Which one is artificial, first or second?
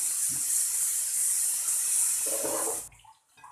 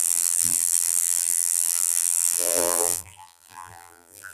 second